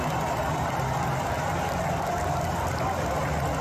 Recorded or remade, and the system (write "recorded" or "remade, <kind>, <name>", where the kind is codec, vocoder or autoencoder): recorded